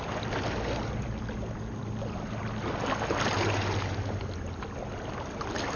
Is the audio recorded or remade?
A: recorded